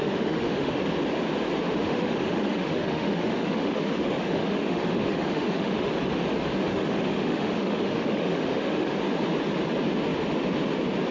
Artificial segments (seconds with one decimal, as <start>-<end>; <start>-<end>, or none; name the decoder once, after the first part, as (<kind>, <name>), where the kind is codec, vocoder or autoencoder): 0.0-0.8 (autoencoder, DAC-VAE); 1.8-5.9; 6.7-8.9